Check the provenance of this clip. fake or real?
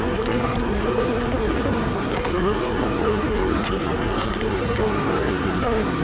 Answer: fake